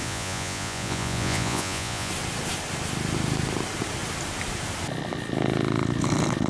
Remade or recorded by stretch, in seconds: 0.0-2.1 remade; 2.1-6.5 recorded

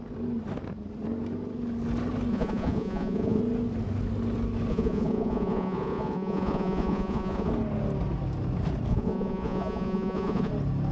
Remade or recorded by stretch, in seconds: 0.0-2.3 recorded; 2.3-3.4 remade; 3.4-4.7 recorded; 4.7-7.5 remade; 7.5-8.9 recorded; 8.9-10.5 remade; 10.5-10.9 recorded

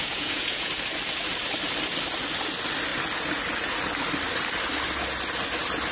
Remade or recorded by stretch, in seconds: 0.0-0.7 remade; 0.7-5.9 recorded

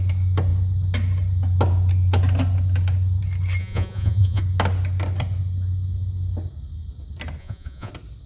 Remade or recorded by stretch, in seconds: 0.0-3.6 recorded; 3.6-4.4 remade; 4.4-7.4 recorded; 7.4-7.9 remade; 7.9-8.3 recorded